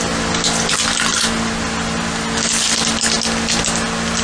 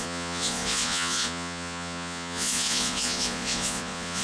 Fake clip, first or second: second